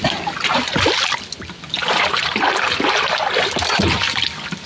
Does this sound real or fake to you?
real